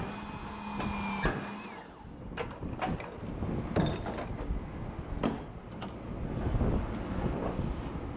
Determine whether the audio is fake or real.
real